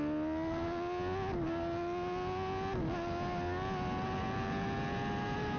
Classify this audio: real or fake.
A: real